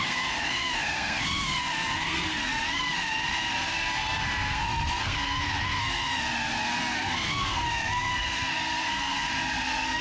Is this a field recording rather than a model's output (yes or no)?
no